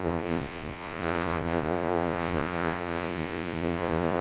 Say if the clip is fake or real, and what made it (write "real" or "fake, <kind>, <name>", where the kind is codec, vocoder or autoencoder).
fake, vocoder, Vocos